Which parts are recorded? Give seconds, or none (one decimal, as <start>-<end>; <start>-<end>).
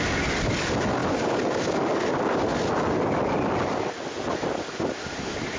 0.0-5.6